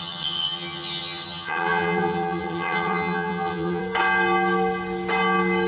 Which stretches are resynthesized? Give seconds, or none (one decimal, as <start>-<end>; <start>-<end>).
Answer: 0.0-3.8